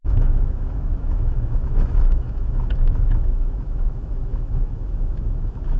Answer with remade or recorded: remade